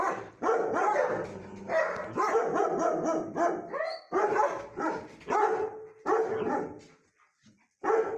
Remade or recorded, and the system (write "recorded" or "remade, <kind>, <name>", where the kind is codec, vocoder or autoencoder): recorded